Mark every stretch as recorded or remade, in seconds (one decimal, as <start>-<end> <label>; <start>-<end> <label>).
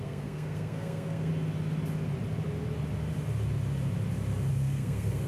0.0-1.3 remade; 1.3-4.5 recorded; 4.5-5.3 remade